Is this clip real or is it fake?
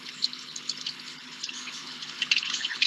fake